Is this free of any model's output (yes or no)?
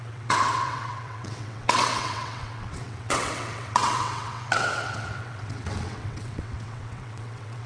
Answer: no